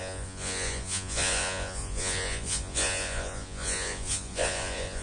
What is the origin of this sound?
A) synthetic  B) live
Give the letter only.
A